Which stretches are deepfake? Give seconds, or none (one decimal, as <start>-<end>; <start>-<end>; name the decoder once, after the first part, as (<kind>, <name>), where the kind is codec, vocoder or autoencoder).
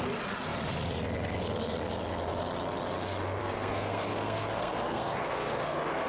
3.4-6.1 (codec, SNAC)